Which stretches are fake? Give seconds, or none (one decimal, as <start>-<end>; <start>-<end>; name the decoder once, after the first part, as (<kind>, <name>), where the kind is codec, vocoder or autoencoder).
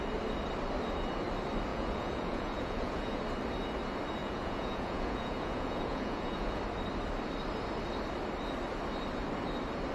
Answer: 1.7-3.2 (vocoder, Vocos); 4.2-6.6